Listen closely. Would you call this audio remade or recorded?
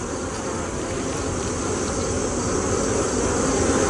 recorded